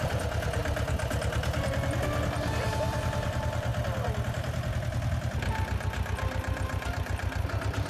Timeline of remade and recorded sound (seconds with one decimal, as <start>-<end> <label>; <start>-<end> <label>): 0.0-0.6 remade; 0.6-2.7 recorded; 2.7-3.7 remade; 3.7-6.9 recorded; 6.9-7.9 remade